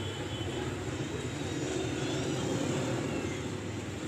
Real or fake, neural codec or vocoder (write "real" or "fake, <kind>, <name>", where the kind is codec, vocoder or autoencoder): real